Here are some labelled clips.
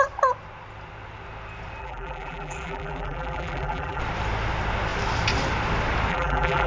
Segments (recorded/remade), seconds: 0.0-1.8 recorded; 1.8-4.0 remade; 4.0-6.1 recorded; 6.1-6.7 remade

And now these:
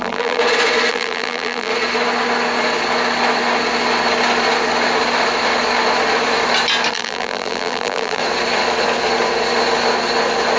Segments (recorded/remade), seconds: 0.0-0.4 remade; 0.4-0.9 recorded; 0.9-1.7 remade; 1.7-6.9 recorded; 6.9-8.2 remade; 8.2-10.6 recorded

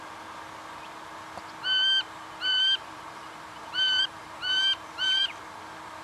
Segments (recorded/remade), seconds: 0.0-2.5 recorded; 2.5-5.6 remade; 5.6-6.0 recorded

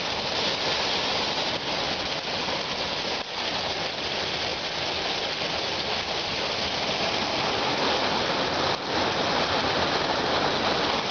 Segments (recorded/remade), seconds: 0.0-11.1 recorded

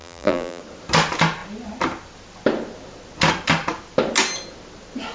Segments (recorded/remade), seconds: 0.0-0.6 remade; 0.6-5.1 recorded

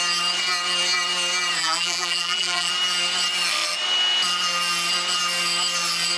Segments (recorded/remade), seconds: 0.0-1.6 recorded; 1.6-2.7 remade; 2.7-6.2 recorded